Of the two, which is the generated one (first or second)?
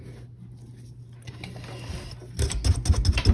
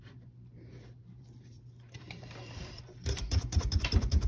second